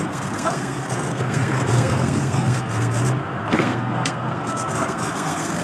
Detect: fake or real fake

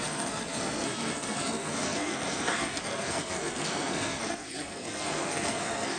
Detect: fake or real fake